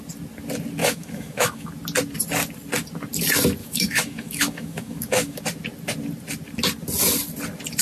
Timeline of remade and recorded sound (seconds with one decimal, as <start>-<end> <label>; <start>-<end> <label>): 0.0-0.8 recorded; 0.8-1.7 remade; 1.7-3.6 recorded; 3.6-5.4 remade; 5.4-7.8 recorded

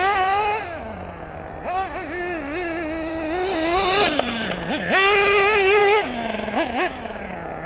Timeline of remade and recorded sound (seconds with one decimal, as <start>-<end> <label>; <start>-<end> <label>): 0.0-5.8 recorded; 5.8-7.2 remade; 7.2-7.7 recorded

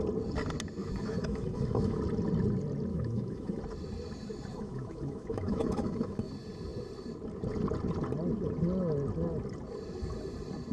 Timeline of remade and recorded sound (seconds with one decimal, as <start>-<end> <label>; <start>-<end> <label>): 0.0-0.8 recorded; 0.8-2.0 remade; 2.0-2.9 recorded; 2.9-3.6 remade; 3.6-4.5 recorded; 4.5-6.3 remade; 6.3-10.7 recorded

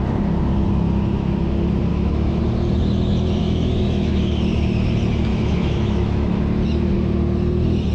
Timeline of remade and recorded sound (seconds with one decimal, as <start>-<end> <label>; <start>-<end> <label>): 0.0-1.9 recorded; 1.9-2.4 remade; 2.4-3.4 recorded; 3.4-4.1 remade; 4.1-5.3 recorded; 5.3-6.4 remade; 6.4-7.9 recorded

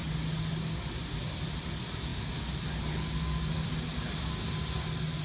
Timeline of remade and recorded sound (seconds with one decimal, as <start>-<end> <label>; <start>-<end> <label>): 0.0-5.2 recorded